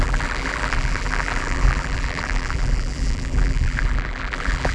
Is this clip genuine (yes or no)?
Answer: no